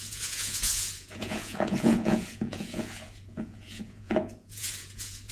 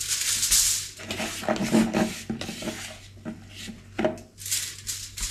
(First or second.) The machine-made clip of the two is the first